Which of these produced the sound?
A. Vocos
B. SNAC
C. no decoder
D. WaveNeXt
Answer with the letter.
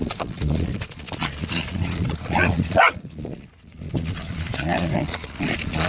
A